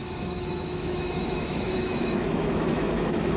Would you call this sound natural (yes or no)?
no